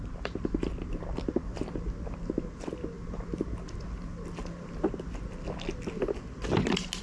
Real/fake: real